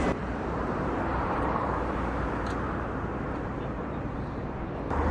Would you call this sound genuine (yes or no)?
no